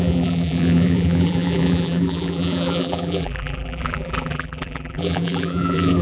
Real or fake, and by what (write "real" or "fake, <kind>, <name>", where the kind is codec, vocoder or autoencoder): fake, vocoder, BigVGAN v2